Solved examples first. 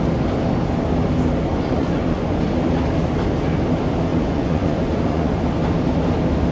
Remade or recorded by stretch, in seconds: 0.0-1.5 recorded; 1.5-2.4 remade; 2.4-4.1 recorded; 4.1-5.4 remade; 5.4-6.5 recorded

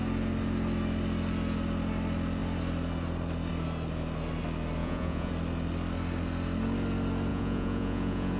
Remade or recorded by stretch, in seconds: 0.0-4.8 recorded; 4.8-5.3 remade; 5.3-7.3 recorded; 7.3-8.4 remade

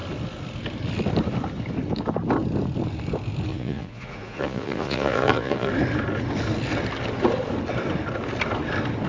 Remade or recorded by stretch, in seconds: 0.0-3.5 recorded; 3.5-5.7 remade; 5.7-9.1 recorded

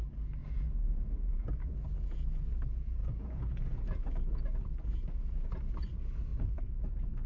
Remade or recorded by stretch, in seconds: 0.0-0.4 recorded; 0.4-2.5 remade; 2.5-3.0 recorded; 3.0-4.4 remade; 4.4-6.3 recorded; 6.3-7.3 remade

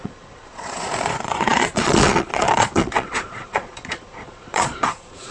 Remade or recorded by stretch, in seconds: 0.0-5.3 remade

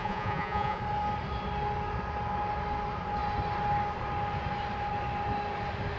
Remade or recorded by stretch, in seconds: 0.0-0.8 remade; 0.8-6.0 recorded

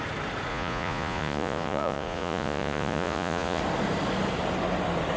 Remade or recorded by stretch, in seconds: 0.0-0.5 recorded; 0.5-3.6 remade; 3.6-5.2 recorded